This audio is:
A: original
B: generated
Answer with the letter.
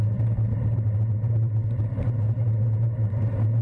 B